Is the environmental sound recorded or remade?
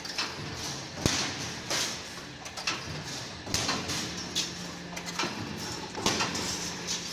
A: recorded